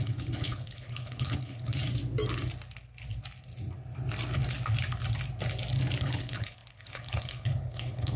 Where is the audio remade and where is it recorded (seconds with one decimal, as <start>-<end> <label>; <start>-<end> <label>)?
0.0-1.8 remade; 1.8-6.0 recorded; 6.0-8.2 remade